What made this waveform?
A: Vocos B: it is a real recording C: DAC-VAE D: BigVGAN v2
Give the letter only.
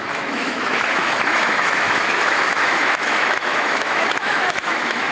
C